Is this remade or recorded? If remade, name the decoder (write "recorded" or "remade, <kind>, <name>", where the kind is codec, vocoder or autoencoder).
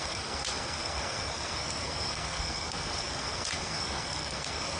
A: remade, codec, SNAC